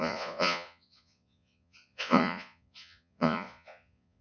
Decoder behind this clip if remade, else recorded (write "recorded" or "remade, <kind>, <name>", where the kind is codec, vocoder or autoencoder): remade, vocoder, Vocos